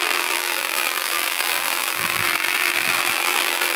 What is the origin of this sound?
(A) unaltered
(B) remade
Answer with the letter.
B